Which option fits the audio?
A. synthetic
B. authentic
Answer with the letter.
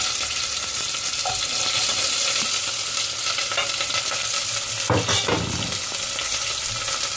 B